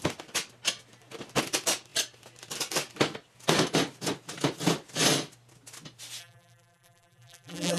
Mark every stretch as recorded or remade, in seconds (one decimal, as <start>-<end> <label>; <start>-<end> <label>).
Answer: 0.0-6.2 recorded; 6.2-7.8 remade

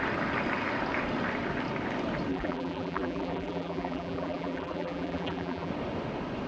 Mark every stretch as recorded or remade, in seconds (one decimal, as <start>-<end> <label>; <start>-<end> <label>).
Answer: 0.0-2.3 recorded; 2.3-5.7 remade; 5.7-6.5 recorded

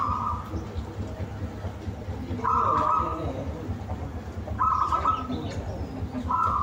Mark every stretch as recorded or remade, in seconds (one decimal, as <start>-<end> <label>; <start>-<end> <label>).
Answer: 0.0-6.6 recorded

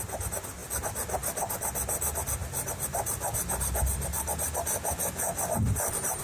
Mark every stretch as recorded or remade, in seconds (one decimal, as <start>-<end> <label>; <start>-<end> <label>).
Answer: 0.0-2.4 recorded; 2.4-6.2 remade

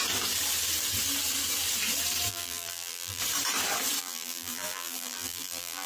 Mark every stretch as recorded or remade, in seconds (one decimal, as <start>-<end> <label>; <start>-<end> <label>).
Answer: 0.0-2.3 recorded; 2.3-3.2 remade; 3.2-4.0 recorded; 4.0-5.9 remade